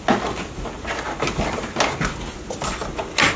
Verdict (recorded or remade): recorded